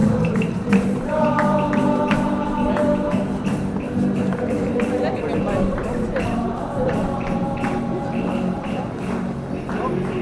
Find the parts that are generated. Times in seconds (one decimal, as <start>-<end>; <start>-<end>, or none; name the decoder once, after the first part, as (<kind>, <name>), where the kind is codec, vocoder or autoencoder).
0.0-4.7 (vocoder, BigVGAN v2)